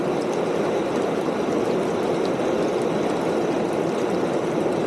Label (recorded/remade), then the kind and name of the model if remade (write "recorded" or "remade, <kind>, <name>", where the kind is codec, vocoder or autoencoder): recorded